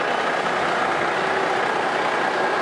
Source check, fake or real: real